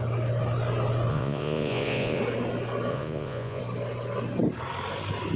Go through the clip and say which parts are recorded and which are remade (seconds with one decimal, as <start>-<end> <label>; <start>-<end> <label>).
0.0-1.1 recorded; 1.1-2.2 remade; 2.2-2.9 recorded; 2.9-3.6 remade; 3.6-5.4 recorded